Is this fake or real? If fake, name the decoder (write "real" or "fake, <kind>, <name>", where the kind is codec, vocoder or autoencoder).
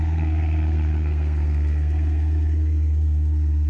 fake, codec, SNAC